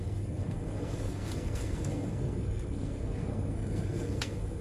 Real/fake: fake